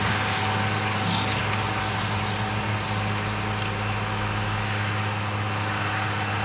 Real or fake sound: real